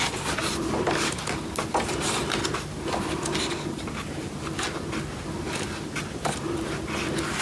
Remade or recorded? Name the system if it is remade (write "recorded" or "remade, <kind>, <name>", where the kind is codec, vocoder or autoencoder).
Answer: recorded